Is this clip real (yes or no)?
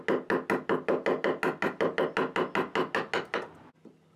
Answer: yes